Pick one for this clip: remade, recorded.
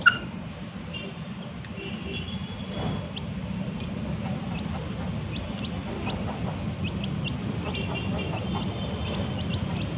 recorded